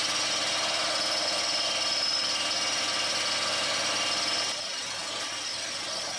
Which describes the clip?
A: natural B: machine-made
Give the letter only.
A